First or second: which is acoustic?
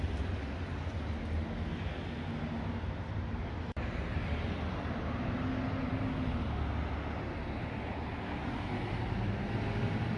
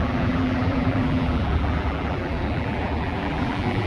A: first